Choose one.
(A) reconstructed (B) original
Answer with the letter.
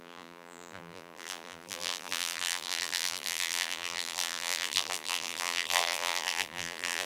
A